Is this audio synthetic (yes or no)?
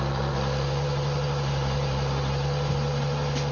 no